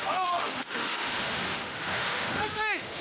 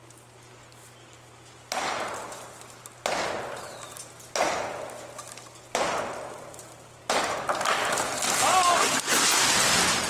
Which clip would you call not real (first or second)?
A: first